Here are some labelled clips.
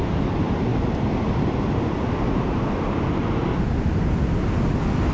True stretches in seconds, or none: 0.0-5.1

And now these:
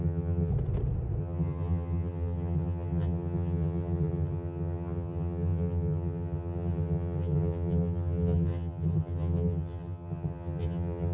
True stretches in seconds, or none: 0.5-1.2

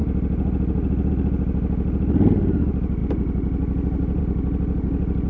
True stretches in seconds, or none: 0.0-5.3